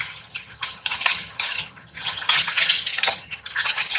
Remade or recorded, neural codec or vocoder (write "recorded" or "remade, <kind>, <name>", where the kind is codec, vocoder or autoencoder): remade, vocoder, HiFi-GAN